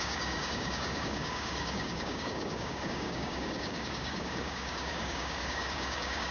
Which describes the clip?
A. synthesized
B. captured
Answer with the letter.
A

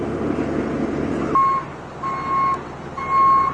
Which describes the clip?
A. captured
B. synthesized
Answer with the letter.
A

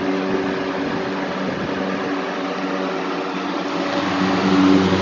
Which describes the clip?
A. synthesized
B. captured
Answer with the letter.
B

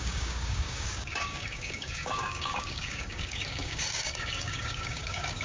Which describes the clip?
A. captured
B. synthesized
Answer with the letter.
B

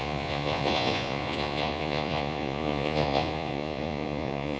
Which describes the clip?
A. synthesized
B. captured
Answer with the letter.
A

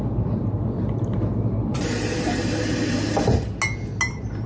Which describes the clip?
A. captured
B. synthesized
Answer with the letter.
A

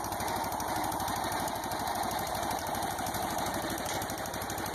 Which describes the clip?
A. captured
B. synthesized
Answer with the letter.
B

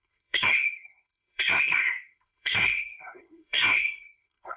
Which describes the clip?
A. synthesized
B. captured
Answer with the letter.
A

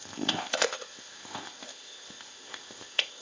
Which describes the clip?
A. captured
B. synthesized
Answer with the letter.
B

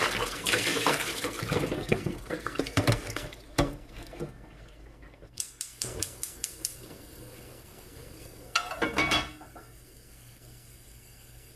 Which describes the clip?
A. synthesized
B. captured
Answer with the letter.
A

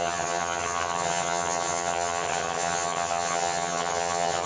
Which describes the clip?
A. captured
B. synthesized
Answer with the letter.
B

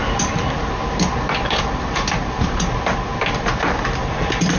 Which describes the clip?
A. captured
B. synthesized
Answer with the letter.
A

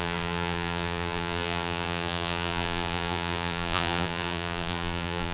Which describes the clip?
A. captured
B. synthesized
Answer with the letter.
B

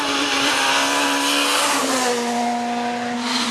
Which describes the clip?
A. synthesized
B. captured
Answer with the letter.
B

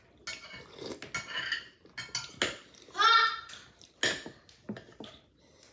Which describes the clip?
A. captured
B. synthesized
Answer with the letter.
A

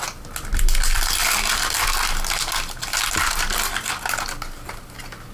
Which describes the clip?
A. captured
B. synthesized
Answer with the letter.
A